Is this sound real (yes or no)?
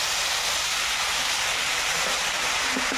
yes